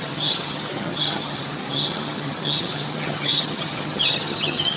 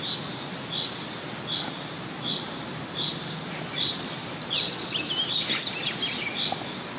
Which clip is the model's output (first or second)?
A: first